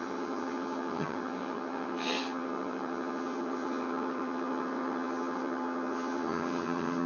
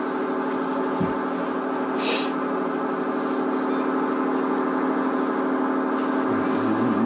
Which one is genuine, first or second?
second